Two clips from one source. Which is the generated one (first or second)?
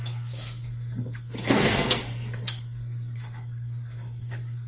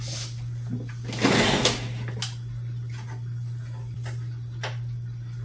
first